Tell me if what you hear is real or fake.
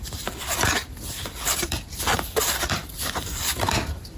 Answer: fake